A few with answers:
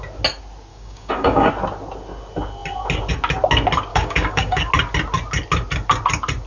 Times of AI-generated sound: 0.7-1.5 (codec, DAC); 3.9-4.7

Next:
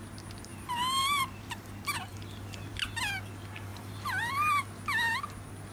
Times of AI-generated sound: 0.5-1.6 (vocoder, BigVGAN v2); 3.7-4.3

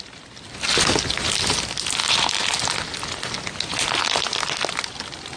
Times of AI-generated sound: 2.0-2.6 (vocoder, BigVGAN v2)